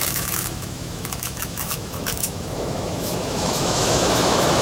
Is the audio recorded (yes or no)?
no